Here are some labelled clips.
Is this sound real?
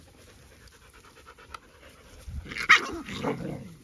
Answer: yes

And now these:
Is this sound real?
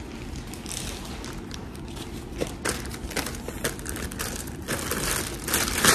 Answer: yes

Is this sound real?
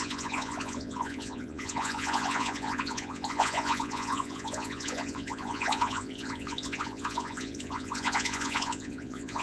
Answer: no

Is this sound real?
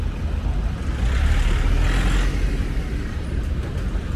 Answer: yes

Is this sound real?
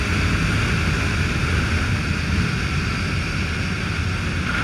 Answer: yes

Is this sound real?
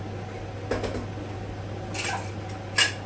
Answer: yes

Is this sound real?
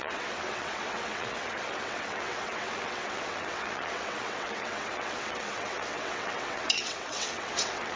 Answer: no